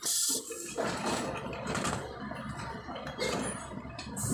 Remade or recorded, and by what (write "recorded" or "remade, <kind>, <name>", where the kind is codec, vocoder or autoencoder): remade, vocoder, BigVGAN v2